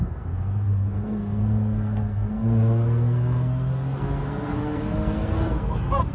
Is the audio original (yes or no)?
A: no